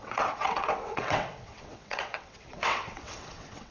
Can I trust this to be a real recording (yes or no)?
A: no